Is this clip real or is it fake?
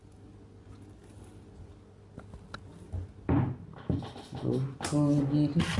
real